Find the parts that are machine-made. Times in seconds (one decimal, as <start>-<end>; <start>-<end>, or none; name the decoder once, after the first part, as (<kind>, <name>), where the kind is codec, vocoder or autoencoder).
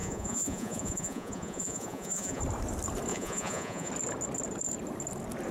0.0-2.4 (vocoder, Vocos); 3.1-3.9